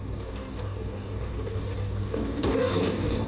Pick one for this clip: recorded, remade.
remade